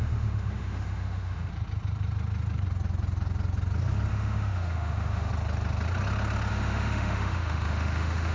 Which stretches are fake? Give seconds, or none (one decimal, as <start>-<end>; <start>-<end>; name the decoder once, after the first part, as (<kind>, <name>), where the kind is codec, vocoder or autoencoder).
0.0-1.5 (autoencoder, DAC-VAE); 4.1-5.3; 6.5-8.3